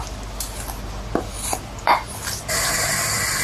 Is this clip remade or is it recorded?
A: recorded